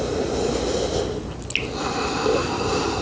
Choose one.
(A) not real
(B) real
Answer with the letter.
B